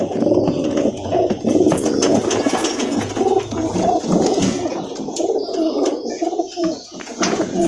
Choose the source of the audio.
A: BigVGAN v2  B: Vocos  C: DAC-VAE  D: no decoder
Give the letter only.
B